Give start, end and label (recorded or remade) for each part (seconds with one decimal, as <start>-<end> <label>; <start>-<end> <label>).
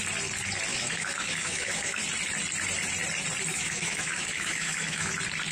0.0-0.7 recorded; 0.7-2.0 remade; 2.0-3.5 recorded; 3.5-5.1 remade; 5.1-5.5 recorded